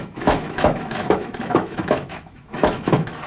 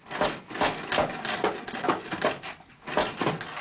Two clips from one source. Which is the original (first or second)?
second